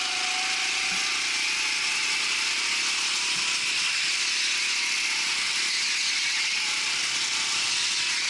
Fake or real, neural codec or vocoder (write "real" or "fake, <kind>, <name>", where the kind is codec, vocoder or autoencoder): real